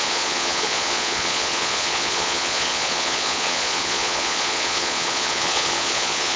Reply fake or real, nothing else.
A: fake